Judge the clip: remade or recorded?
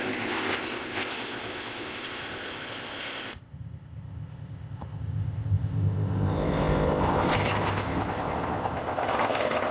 remade